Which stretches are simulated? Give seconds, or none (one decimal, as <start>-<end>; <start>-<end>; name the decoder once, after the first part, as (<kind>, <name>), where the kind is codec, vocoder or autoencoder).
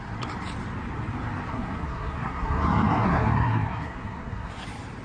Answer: 1.5-4.5 (codec, SNAC)